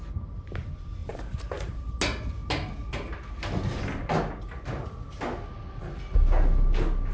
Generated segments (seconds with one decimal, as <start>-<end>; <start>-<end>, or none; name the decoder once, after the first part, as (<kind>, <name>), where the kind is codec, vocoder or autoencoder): 1.0-1.9 (vocoder, BigVGAN v2)